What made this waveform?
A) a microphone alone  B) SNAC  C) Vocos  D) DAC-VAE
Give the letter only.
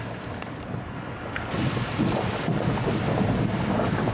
A